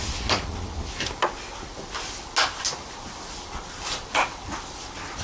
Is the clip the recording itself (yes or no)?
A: yes